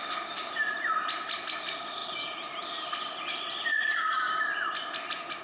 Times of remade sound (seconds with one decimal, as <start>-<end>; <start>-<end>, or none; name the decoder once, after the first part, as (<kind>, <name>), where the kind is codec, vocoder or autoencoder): 0.0-0.5 (autoencoder, DAC-VAE)